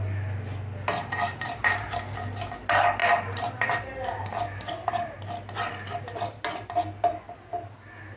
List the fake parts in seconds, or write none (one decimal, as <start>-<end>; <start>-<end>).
none